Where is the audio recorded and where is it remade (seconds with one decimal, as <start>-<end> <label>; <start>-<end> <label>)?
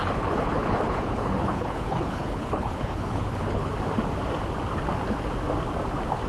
0.0-3.7 remade; 3.7-6.3 recorded